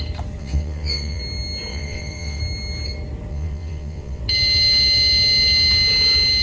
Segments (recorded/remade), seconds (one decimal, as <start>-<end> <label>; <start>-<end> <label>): 0.0-0.4 recorded; 0.4-1.2 remade; 1.2-1.7 recorded; 1.7-2.4 remade; 2.4-3.3 recorded; 3.3-4.2 remade; 4.2-6.4 recorded